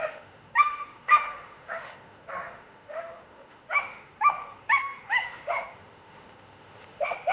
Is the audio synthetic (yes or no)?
yes